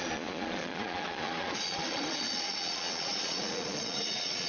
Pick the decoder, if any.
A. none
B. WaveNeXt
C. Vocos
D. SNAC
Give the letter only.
C